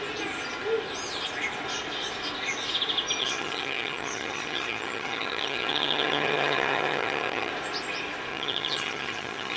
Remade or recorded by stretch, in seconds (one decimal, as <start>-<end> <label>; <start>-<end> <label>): 0.0-3.2 recorded; 3.2-7.5 remade; 7.5-8.3 recorded; 8.3-9.6 remade